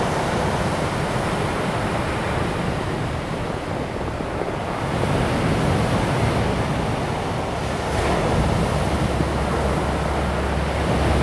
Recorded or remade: recorded